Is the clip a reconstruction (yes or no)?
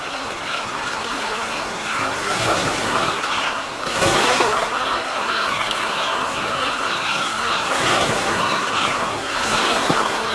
yes